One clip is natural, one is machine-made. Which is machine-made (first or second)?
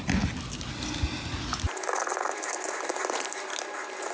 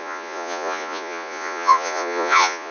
second